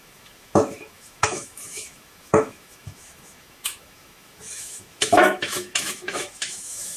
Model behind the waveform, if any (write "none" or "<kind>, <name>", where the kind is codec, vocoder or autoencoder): autoencoder, DAC-VAE